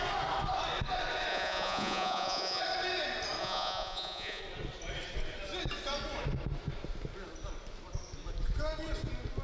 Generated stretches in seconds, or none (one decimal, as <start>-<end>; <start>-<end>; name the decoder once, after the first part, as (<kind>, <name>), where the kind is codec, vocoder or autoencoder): 1.3-2.6 (vocoder, Vocos); 3.4-4.4